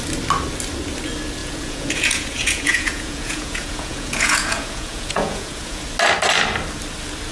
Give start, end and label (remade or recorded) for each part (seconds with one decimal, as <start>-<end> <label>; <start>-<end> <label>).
0.0-1.4 recorded; 1.4-5.8 remade; 5.8-7.3 recorded